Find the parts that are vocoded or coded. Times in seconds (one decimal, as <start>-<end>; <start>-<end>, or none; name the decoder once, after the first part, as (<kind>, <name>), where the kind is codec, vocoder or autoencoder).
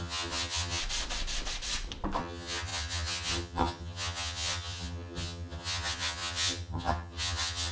0.0-0.8 (vocoder, HiFi-GAN); 2.2-7.7